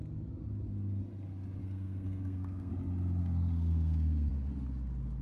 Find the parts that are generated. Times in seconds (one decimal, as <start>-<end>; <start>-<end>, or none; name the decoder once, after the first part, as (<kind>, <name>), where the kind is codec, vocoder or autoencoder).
1.6-2.7 (codec, SNAC); 3.2-4.3